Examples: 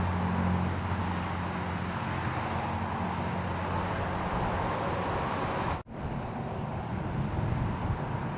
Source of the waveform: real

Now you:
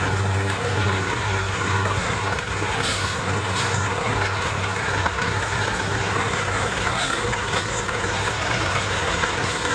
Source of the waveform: fake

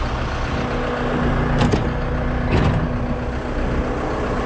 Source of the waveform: real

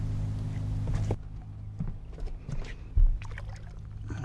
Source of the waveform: real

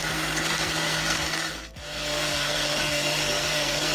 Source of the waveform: fake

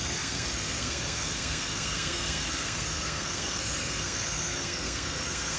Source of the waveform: fake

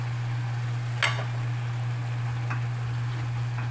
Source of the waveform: real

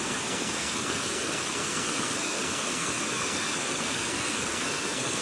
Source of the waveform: fake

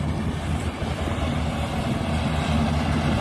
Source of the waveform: real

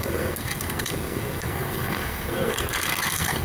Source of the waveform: fake